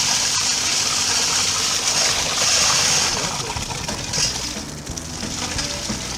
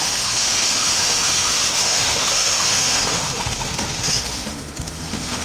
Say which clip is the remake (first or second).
second